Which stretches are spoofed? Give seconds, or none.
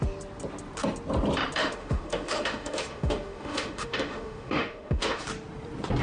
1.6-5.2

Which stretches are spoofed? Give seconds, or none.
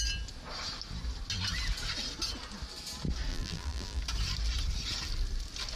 3.3-4.0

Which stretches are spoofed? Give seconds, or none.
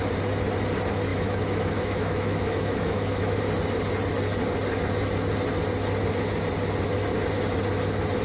1.1-3.4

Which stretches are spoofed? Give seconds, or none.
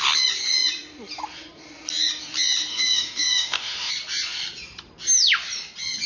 2.7-3.9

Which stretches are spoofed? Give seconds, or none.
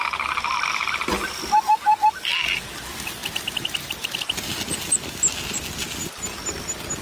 none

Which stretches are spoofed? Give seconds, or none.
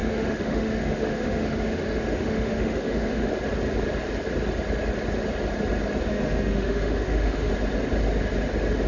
0.0-3.3; 6.1-7.5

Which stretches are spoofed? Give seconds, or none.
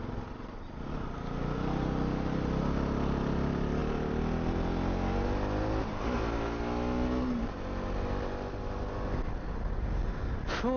none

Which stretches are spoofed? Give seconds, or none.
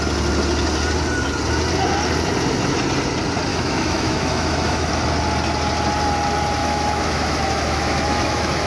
3.5-4.9; 6.6-8.7